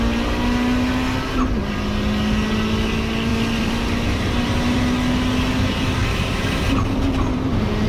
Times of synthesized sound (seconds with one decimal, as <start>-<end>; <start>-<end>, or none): 3.3-4.8; 6.0-7.2